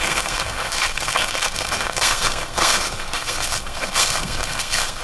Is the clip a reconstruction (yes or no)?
yes